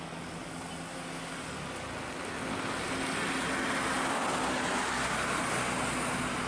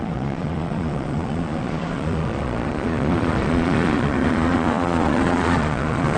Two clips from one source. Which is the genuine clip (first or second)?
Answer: first